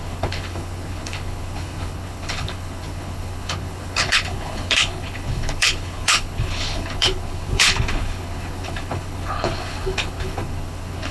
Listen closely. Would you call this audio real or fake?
fake